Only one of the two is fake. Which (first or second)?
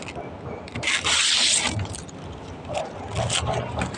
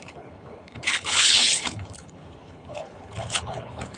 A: second